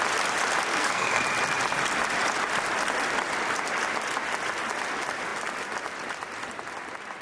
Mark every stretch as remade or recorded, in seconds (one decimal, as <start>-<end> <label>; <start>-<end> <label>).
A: 0.0-0.7 recorded; 0.7-1.2 remade; 1.2-7.2 recorded